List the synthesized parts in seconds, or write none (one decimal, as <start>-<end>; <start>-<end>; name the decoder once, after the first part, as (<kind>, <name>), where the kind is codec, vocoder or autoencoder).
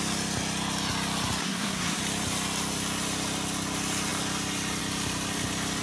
1.4-2.0 (codec, SNAC)